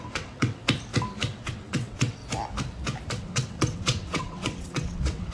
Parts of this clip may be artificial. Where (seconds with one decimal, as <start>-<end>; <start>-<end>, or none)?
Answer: 0.0-0.6; 1.3-2.2; 3.1-5.3